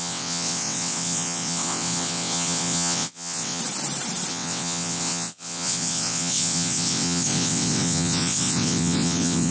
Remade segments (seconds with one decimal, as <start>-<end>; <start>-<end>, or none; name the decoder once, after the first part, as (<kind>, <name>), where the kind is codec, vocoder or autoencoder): 0.0-3.6 (vocoder, WaveNeXt); 4.3-9.5